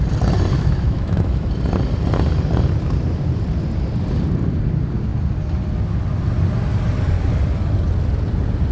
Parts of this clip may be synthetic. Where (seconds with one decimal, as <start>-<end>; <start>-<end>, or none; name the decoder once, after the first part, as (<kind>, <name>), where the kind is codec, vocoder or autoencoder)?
0.5-1.5 (autoencoder, DAC-VAE)